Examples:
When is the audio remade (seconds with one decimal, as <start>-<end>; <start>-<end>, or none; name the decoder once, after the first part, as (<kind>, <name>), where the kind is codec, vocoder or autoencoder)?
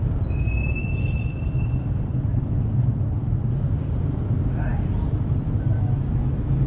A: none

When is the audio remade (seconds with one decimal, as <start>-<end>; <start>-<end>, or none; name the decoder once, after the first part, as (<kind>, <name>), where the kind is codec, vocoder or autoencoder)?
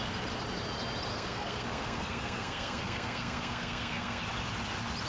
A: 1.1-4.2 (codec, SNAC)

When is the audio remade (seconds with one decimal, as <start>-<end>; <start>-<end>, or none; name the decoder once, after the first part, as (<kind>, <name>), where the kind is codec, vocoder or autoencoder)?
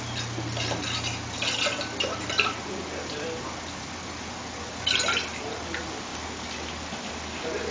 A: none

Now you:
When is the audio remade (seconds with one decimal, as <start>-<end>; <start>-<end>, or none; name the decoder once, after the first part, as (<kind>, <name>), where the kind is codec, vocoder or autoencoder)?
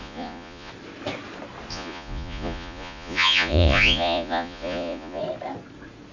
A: 0.0-0.7 (vocoder, Vocos); 1.7-5.2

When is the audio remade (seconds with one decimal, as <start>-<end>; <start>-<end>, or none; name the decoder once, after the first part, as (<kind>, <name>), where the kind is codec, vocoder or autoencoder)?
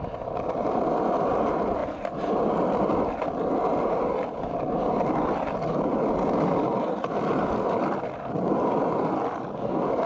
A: 0.0-1.8 (vocoder, BigVGAN v2); 6.4-10.1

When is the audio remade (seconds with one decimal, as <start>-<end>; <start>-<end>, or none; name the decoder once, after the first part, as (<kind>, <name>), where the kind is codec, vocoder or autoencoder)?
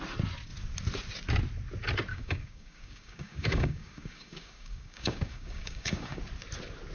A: 2.1-6.2 (codec, DAC)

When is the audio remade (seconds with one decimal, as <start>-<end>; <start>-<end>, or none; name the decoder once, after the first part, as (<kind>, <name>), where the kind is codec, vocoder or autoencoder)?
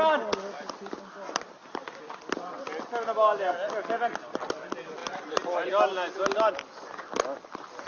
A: 5.0-5.7 (vocoder, BigVGAN v2)